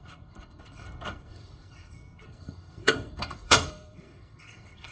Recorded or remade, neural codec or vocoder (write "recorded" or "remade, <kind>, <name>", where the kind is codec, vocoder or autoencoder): remade, codec, SNAC